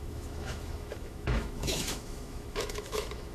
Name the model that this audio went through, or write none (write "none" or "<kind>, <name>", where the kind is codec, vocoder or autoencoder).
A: autoencoder, DAC-VAE